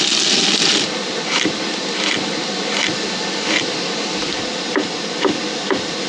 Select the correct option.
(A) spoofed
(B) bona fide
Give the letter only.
B